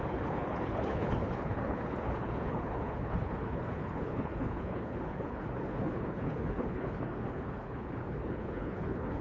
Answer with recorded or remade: remade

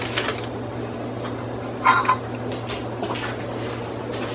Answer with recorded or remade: recorded